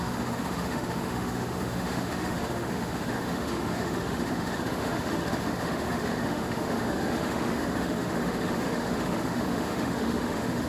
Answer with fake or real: fake